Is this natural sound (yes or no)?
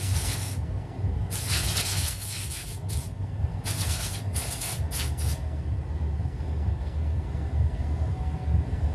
no